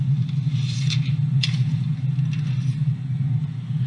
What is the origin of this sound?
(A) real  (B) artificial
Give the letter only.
A